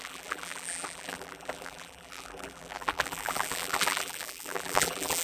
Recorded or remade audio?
remade